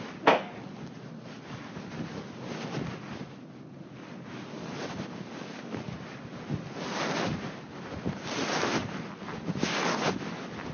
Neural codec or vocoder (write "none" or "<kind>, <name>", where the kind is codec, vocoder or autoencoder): none